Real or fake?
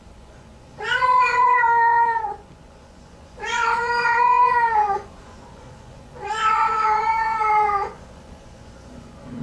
fake